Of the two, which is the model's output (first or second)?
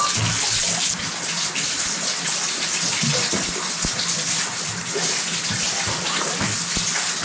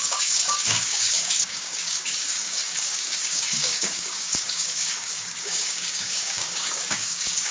second